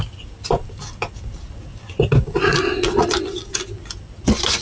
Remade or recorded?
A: recorded